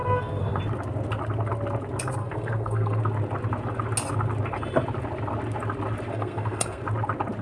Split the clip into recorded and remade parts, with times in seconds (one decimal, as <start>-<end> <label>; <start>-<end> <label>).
0.0-0.6 remade; 0.6-2.2 recorded; 2.2-3.0 remade; 3.0-6.1 recorded; 6.1-6.8 remade; 6.8-7.4 recorded